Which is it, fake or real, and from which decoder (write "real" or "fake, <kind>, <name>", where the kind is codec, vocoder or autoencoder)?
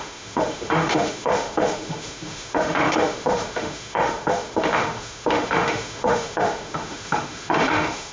fake, autoencoder, DAC-VAE